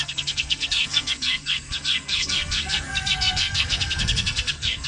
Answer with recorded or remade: remade